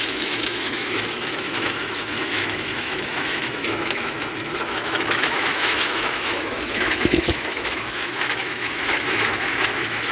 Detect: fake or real fake